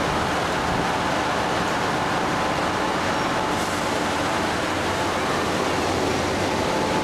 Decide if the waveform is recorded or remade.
recorded